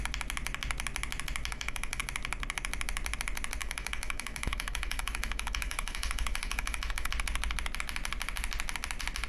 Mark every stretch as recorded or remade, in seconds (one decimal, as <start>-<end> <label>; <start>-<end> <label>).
0.0-1.5 recorded; 1.5-2.0 remade; 2.0-3.6 recorded; 3.6-7.1 remade; 7.1-9.3 recorded